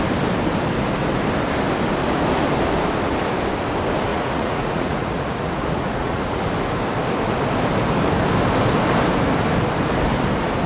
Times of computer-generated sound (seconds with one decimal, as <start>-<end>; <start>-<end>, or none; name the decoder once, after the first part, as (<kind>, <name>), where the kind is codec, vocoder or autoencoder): 4.1-6.4 (vocoder, Vocos)